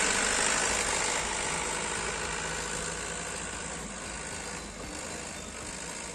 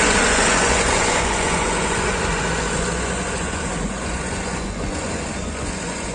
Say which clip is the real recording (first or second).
first